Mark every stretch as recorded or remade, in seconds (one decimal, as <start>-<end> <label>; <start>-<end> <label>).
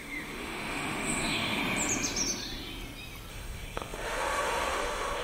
0.0-1.6 remade; 1.6-3.3 recorded; 3.3-5.2 remade